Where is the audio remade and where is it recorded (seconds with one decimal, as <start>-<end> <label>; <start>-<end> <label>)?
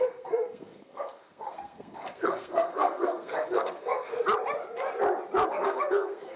0.0-4.1 remade; 4.1-5.5 recorded; 5.5-6.4 remade